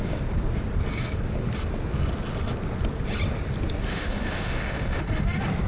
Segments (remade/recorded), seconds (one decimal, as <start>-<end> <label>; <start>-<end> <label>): 0.0-3.9 recorded; 3.9-5.0 remade; 5.0-5.7 recorded